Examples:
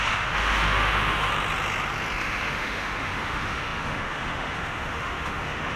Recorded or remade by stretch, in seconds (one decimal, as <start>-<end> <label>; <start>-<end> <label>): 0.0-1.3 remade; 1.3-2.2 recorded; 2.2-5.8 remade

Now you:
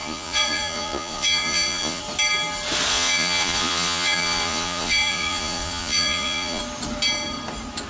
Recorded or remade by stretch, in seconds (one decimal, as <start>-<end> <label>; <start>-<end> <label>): 0.0-2.0 remade; 2.0-2.9 recorded; 2.9-6.6 remade; 6.6-7.9 recorded

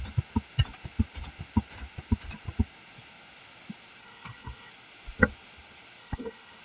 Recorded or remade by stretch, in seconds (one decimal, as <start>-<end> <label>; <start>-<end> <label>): 0.0-4.0 recorded; 4.0-4.7 remade; 4.7-6.0 recorded; 6.0-6.6 remade